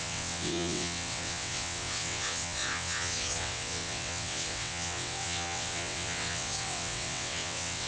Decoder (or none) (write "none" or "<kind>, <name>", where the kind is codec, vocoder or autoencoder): vocoder, WaveNeXt